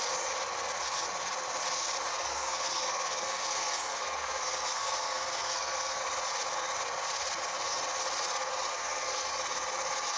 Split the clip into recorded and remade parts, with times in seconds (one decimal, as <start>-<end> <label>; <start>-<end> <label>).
0.0-2.1 recorded; 2.1-6.0 remade; 6.0-8.7 recorded; 8.7-9.3 remade; 9.3-10.2 recorded